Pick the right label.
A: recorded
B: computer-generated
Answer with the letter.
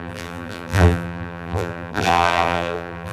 B